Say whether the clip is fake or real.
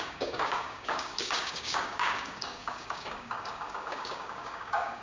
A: fake